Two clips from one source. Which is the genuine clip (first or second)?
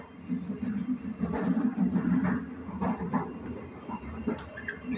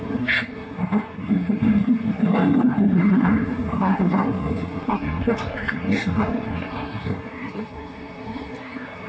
first